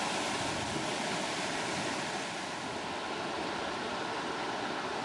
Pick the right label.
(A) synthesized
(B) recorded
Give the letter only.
B